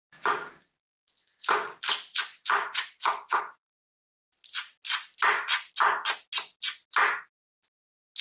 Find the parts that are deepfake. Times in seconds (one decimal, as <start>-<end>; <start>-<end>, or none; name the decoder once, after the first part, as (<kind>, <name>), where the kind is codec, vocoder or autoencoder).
1.2-1.8 (vocoder, Vocos); 2.3-4.3